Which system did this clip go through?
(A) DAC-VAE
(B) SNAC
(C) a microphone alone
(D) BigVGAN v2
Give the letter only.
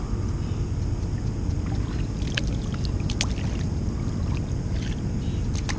C